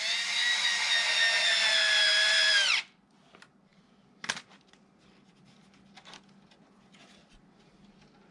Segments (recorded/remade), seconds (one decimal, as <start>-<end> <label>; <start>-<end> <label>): 0.0-8.3 recorded